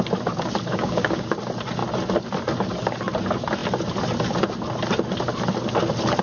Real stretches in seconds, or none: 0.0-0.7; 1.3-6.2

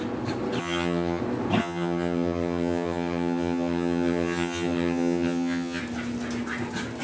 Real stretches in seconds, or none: 0.0-0.6; 1.2-1.6; 5.8-7.0